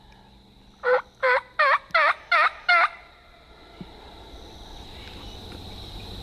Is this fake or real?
real